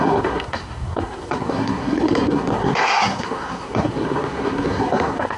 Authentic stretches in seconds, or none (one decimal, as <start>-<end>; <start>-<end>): none